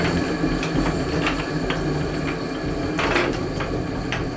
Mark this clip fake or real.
real